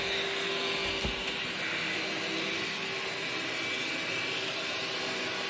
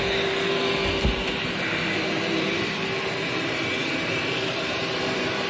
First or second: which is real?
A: first